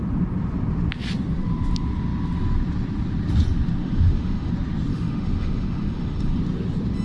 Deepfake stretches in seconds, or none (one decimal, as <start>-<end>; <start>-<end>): 3.8-4.5; 4.9-6.4